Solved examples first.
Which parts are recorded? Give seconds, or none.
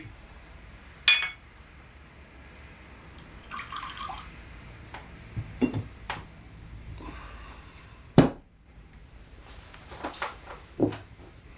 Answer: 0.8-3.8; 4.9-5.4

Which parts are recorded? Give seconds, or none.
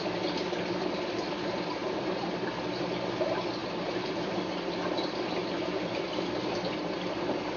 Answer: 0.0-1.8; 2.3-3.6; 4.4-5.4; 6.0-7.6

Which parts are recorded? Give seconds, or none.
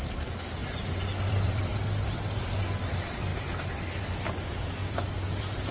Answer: 0.6-1.2; 1.7-2.9; 3.3-3.9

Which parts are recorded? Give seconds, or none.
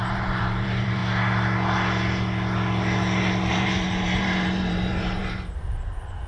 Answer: 1.0-3.5